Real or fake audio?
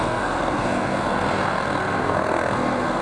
fake